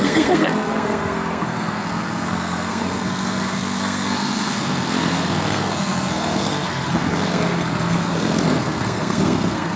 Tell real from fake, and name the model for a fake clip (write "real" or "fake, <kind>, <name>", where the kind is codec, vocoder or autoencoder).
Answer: fake, codec, SNAC